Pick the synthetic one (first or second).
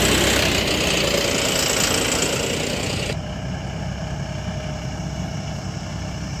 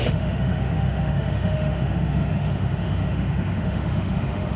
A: second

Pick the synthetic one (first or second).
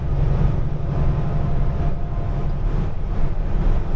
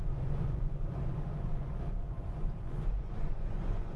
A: second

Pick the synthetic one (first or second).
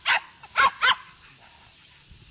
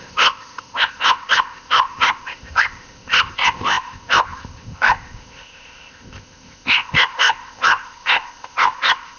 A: second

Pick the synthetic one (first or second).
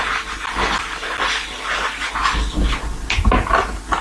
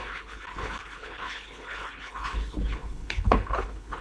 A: second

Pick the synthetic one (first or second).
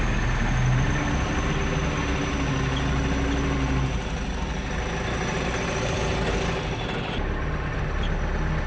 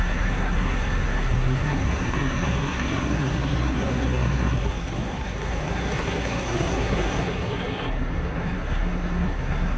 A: second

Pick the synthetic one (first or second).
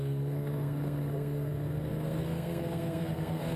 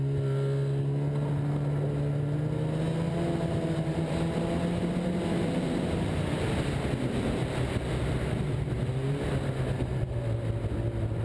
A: first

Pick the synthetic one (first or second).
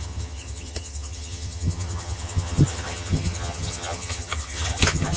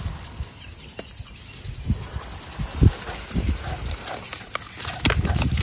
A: first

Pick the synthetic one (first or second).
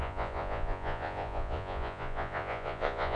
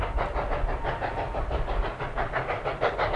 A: first